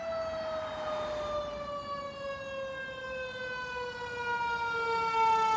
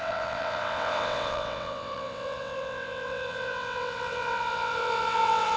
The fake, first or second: second